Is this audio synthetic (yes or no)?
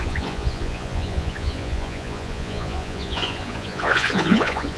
yes